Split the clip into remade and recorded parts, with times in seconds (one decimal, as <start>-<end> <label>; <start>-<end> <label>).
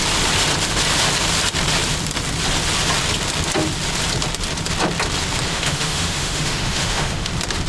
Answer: 0.0-5.5 recorded; 5.5-7.3 remade; 7.3-7.7 recorded